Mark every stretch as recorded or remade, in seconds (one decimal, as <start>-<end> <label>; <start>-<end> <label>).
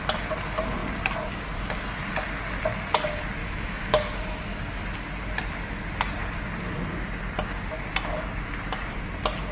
0.0-3.4 recorded; 3.4-4.4 remade; 4.4-9.5 recorded